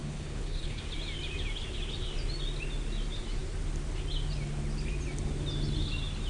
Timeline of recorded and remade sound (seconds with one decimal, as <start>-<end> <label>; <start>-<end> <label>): 0.0-0.8 remade; 0.8-6.3 recorded